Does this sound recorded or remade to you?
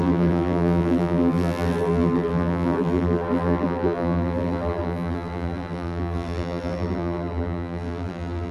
remade